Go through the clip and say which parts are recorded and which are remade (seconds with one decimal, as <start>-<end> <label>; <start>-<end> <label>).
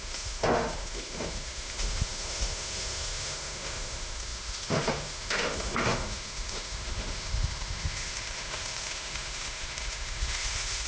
0.0-10.9 remade